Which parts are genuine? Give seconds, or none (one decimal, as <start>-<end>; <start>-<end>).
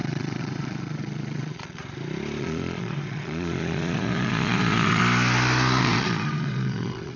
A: 1.8-2.4; 5.0-5.8